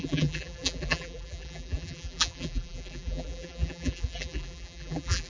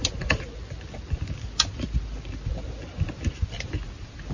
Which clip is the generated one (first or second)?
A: first